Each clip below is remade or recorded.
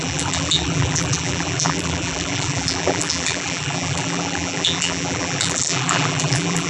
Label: remade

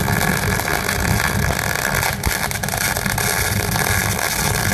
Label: recorded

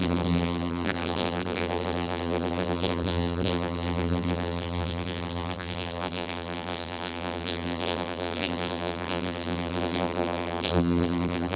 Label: remade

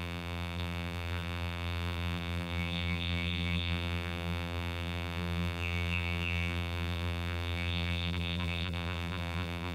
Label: remade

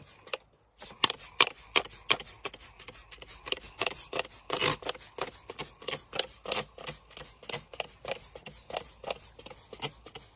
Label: recorded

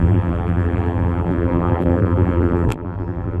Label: remade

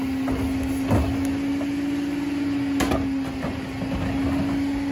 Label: recorded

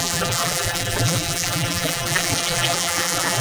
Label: remade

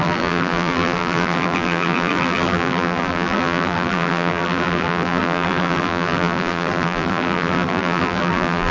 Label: remade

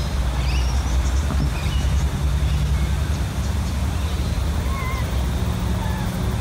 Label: recorded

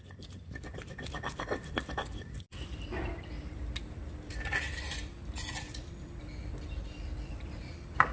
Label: recorded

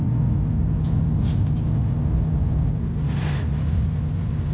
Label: recorded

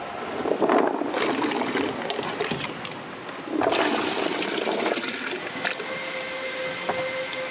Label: recorded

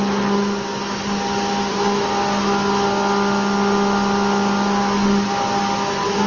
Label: recorded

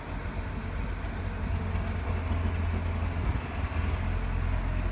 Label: recorded